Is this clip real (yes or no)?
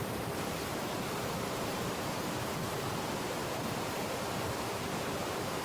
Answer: no